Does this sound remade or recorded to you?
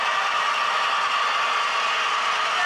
recorded